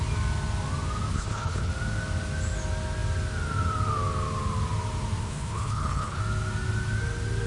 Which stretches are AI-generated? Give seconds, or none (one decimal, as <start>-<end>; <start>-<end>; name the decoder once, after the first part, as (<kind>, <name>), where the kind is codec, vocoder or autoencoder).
1.1-1.7 (codec, HILCodec); 5.2-6.2